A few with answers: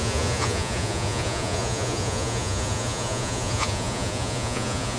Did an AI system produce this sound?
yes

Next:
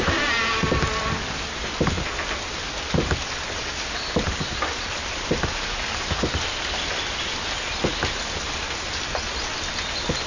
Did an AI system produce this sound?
no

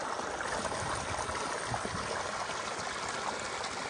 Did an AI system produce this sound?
no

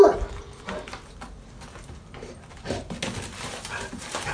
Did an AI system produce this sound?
no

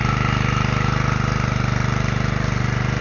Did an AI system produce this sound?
no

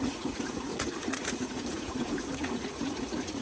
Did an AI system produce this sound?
yes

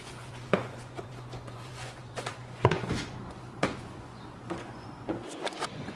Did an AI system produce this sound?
yes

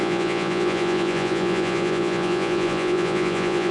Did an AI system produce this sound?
yes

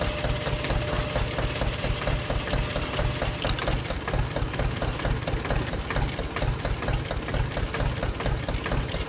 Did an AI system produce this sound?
no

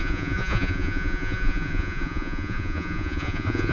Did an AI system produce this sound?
yes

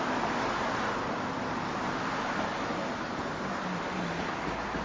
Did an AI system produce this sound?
no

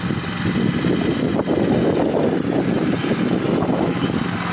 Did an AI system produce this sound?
no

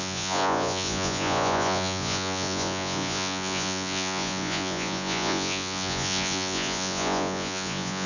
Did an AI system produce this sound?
yes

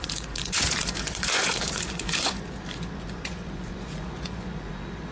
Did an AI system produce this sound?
yes